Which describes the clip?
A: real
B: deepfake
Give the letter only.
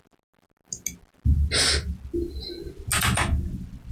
A